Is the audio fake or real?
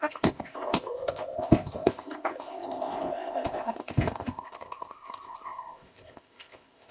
fake